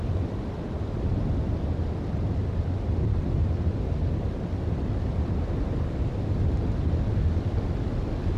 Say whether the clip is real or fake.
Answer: real